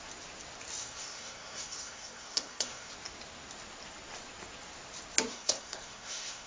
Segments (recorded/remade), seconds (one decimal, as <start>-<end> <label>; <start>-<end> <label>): 0.0-0.8 recorded; 0.8-2.9 remade; 2.9-5.3 recorded; 5.3-6.5 remade